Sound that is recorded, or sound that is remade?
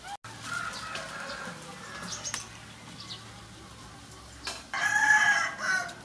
recorded